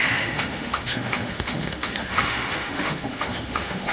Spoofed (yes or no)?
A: yes